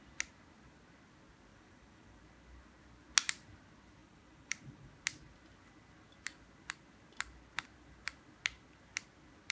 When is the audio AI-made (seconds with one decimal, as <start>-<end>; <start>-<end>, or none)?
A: 1.5-2.2; 4.0-4.9